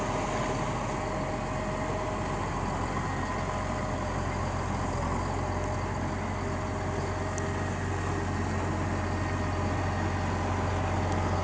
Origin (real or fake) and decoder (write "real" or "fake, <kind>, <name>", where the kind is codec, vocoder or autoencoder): real